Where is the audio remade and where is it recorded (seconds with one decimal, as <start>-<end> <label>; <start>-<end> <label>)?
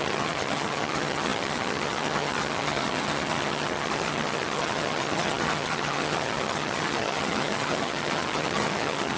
0.0-9.2 remade